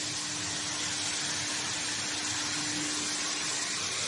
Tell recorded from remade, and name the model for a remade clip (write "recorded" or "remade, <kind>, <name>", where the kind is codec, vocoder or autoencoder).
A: recorded